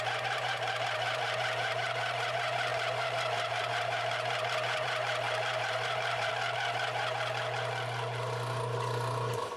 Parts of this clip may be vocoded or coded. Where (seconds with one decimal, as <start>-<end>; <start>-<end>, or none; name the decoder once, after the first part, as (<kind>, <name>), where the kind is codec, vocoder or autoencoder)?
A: 0.0-6.3 (vocoder, BigVGAN v2)